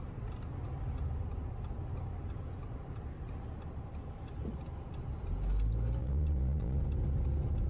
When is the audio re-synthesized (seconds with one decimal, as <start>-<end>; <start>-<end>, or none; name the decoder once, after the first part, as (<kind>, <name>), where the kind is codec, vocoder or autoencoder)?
6.0-6.8 (vocoder, Vocos)